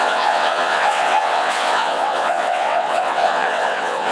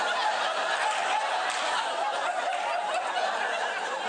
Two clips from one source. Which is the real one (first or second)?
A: second